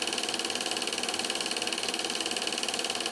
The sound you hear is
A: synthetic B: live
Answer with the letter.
B